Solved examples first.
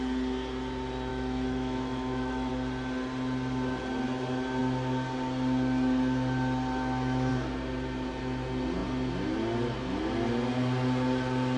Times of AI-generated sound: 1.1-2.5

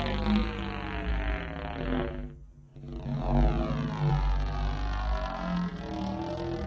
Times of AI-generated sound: none

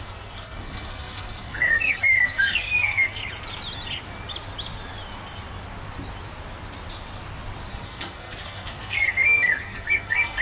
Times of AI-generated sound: 0.0-3.2; 7.7-10.4

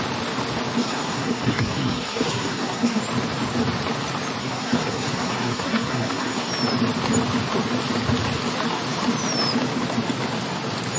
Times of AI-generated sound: 0.8-3.0; 4.4-6.5

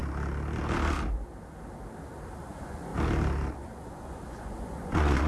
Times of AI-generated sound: 2.4-2.9; 3.5-5.3

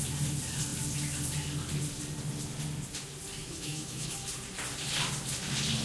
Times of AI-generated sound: 3.4-4.1

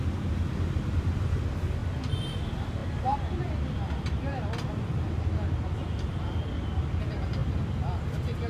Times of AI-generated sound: 1.8-2.4

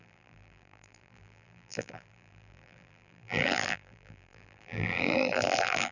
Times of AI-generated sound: 0.0-5.9